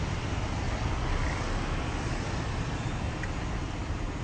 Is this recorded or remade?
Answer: recorded